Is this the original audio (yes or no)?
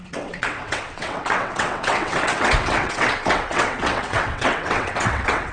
no